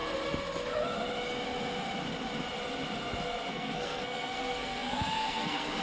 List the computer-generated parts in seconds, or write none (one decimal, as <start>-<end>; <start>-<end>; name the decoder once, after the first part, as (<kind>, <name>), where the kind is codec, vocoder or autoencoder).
3.5-5.8 (codec, SNAC)